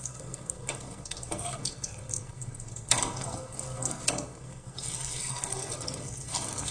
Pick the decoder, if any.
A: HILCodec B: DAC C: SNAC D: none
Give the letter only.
C